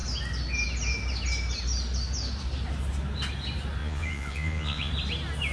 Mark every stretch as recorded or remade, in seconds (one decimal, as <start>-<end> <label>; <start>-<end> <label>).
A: 0.0-3.8 recorded; 3.8-4.9 remade; 4.9-5.5 recorded